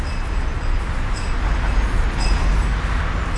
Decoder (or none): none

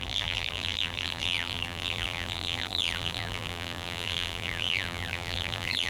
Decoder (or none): vocoder, BigVGAN v2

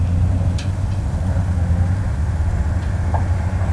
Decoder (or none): none